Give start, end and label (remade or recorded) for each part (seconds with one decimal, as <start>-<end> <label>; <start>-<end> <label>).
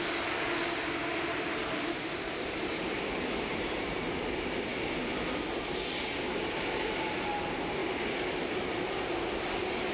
0.0-1.6 recorded; 1.6-4.2 remade; 4.2-7.8 recorded; 7.8-8.5 remade; 8.5-9.9 recorded